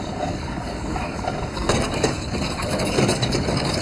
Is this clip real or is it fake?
fake